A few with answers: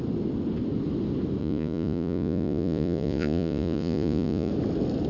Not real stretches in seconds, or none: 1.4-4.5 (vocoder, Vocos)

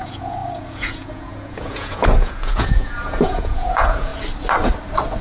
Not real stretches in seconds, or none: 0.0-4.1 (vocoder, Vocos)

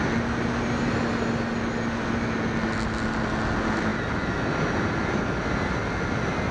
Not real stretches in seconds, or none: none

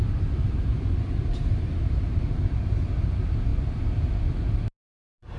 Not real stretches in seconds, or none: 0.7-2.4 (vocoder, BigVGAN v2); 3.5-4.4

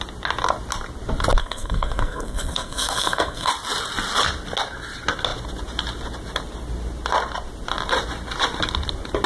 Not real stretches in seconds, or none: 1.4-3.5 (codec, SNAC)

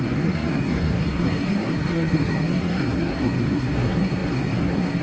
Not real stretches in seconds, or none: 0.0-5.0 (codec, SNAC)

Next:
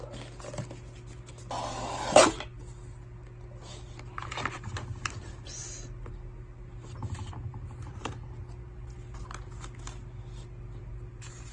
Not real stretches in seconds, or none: 7.5-8.1 (vocoder, BigVGAN v2)